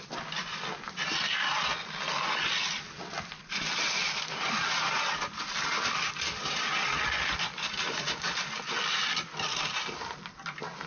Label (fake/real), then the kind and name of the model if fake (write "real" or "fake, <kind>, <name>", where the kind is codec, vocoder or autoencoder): real